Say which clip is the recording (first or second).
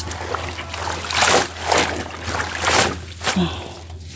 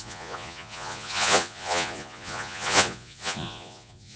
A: first